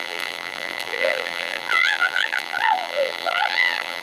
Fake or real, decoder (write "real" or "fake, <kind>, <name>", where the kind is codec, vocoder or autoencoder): fake, vocoder, BigVGAN v2